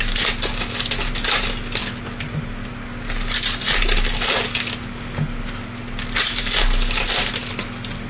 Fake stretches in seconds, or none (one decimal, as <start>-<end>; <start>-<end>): none